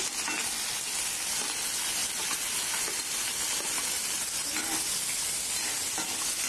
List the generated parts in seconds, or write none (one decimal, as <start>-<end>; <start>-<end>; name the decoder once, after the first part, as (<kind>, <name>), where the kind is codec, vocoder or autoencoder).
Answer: none